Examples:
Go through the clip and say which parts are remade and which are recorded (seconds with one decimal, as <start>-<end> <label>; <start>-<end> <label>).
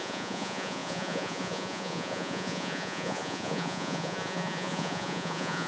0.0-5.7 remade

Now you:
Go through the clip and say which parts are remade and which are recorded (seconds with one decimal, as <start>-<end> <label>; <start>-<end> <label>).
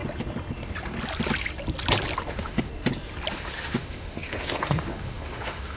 0.0-2.3 recorded; 2.3-2.7 remade; 2.7-3.3 recorded; 3.3-5.8 remade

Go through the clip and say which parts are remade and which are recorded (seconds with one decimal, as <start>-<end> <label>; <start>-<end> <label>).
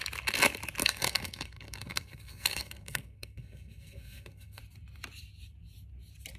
0.0-0.8 recorded; 0.8-4.6 remade; 4.6-6.4 recorded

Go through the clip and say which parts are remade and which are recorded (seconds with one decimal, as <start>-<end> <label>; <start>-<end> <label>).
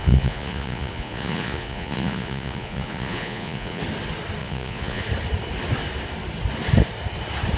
0.0-3.8 remade; 3.8-4.4 recorded; 4.4-5.0 remade; 5.0-7.6 recorded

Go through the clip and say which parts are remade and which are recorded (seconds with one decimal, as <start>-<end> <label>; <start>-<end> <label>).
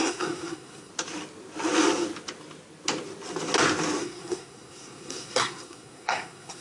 0.0-0.9 remade; 0.9-4.0 recorded; 4.0-6.6 remade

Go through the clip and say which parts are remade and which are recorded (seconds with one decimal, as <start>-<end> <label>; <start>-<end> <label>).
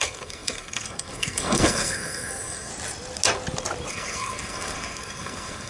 0.0-2.7 remade; 2.7-3.9 recorded; 3.9-5.7 remade